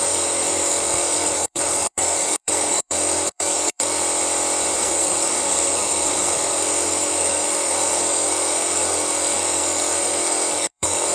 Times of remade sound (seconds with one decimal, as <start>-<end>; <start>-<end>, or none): 0.0-4.0; 4.8-11.1